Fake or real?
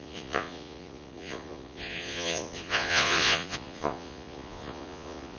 fake